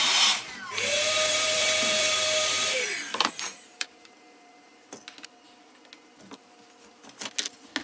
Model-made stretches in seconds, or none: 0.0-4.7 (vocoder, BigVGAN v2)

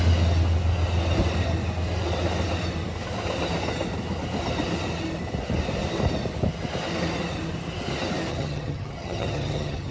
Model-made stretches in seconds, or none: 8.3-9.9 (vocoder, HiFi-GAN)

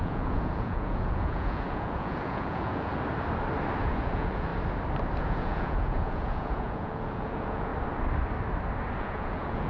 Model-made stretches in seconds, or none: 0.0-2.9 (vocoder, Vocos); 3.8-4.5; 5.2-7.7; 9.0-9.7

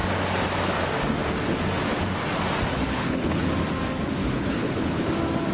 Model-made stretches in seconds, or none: 2.7-3.5 (codec, HILCodec); 4.2-5.1